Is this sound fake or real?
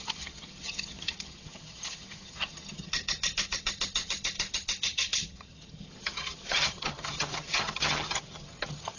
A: fake